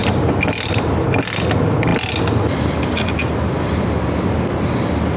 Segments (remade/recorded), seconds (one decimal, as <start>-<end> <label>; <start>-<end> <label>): 0.0-5.2 recorded